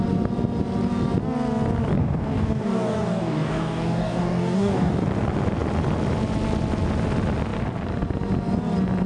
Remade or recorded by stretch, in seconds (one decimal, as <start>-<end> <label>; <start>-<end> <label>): 0.0-2.0 recorded; 2.0-4.9 remade; 4.9-9.1 recorded